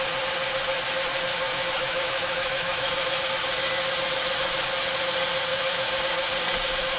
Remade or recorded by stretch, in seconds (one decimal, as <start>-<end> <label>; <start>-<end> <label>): 0.0-1.3 recorded; 1.3-3.2 remade; 3.2-5.5 recorded; 5.5-6.0 remade; 6.0-7.0 recorded